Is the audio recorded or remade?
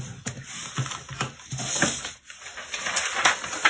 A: recorded